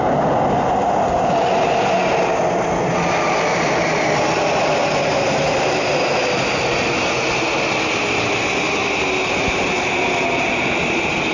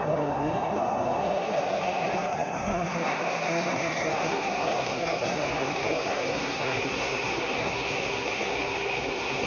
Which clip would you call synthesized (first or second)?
second